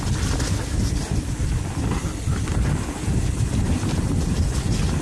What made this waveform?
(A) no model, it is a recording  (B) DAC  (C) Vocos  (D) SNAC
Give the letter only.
A